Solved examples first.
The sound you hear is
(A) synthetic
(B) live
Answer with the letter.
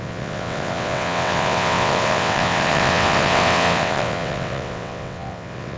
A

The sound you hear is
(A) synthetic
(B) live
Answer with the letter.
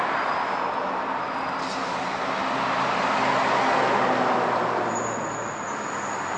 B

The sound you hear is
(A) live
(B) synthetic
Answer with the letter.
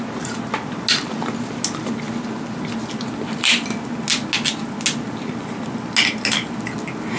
A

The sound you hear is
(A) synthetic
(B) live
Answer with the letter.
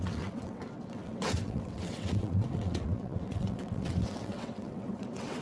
A